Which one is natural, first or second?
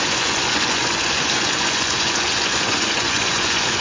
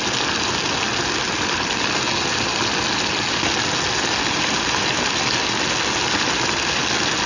second